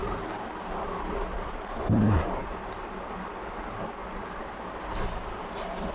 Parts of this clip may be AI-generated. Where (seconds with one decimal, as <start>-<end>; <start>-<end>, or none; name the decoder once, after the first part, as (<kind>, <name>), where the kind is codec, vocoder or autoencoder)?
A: none